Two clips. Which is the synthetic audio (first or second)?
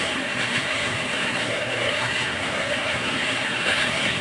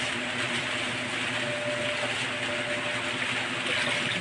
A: first